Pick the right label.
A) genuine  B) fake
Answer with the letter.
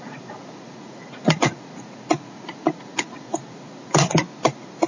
B